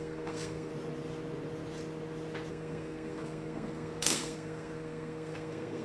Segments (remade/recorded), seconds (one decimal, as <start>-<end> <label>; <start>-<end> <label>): 0.0-0.7 remade; 0.7-2.5 recorded; 2.5-5.8 remade